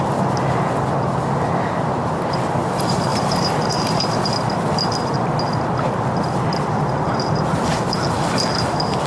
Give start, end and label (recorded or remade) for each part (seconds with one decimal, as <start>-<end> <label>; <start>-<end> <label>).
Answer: 0.0-3.1 recorded; 3.1-4.0 remade; 4.0-9.1 recorded